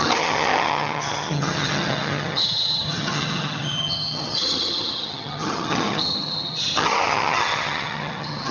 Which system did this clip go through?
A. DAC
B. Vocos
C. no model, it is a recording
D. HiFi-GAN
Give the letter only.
D